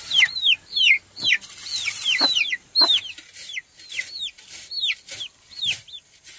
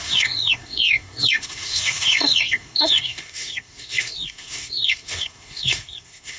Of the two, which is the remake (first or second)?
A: second